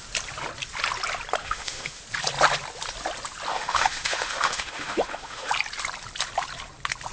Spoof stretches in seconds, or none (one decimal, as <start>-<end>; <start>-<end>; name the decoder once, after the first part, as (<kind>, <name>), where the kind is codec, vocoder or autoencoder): 1.4-2.0 (autoencoder, DAC-VAE); 3.5-5.5